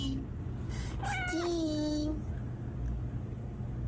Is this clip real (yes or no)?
yes